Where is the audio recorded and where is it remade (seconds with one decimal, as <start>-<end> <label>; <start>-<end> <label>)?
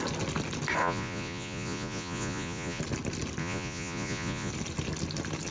0.0-0.8 recorded; 0.8-2.8 remade; 2.8-3.4 recorded; 3.4-4.5 remade; 4.5-5.5 recorded